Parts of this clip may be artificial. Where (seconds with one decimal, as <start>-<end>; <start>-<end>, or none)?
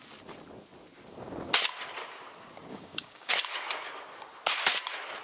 2.7-3.3